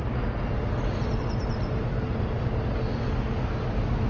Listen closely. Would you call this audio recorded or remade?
recorded